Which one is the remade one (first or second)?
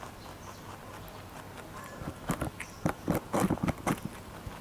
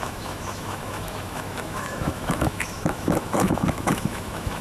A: second